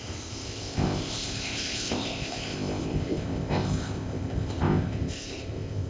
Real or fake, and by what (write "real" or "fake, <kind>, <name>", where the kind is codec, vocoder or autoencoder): fake, codec, ZipCodec